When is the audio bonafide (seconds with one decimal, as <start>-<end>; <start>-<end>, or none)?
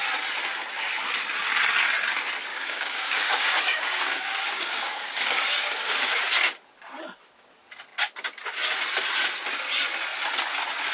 0.0-2.5; 6.2-10.9